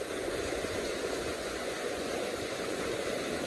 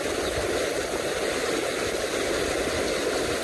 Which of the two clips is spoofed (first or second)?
first